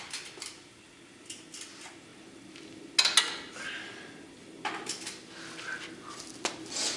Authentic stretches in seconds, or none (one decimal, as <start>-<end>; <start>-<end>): 0.0-7.0